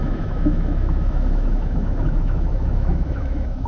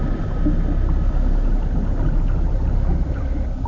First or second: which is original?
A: second